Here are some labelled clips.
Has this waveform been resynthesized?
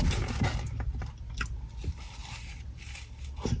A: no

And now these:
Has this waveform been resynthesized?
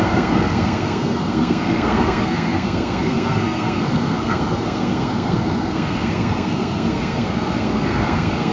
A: yes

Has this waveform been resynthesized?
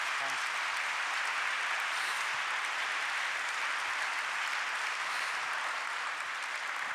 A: no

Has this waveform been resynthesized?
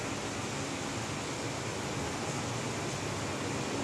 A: no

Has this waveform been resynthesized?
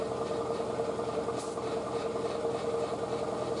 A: no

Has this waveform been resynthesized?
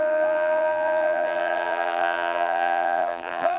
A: yes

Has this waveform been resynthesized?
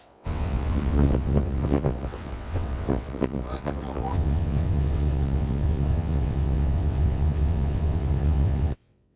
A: yes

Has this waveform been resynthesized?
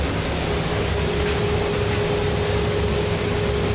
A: no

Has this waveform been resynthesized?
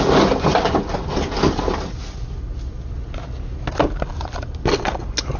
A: no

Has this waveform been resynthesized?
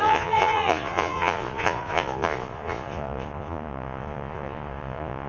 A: yes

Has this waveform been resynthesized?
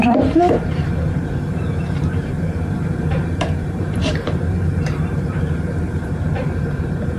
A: yes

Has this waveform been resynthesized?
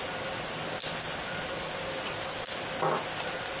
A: no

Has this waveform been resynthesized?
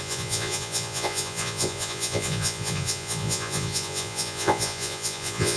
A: yes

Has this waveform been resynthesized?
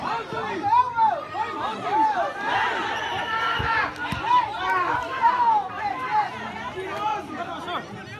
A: no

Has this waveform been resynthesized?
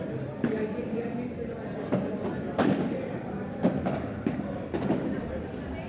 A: no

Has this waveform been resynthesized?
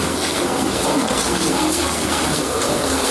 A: yes